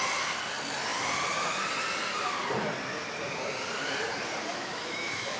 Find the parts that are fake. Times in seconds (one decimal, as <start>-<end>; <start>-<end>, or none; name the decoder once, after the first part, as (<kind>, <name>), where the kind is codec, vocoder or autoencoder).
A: 4.5-5.4 (autoencoder, DAC-VAE)